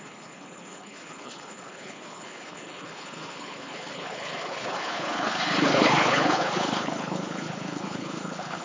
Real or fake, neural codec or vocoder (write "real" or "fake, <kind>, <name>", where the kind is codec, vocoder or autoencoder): fake, codec, HILCodec